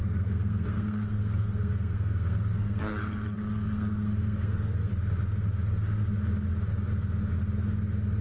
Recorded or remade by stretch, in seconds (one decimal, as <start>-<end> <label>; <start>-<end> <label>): 0.0-4.9 remade; 4.9-8.2 recorded